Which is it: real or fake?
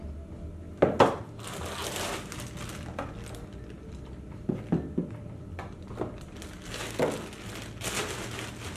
real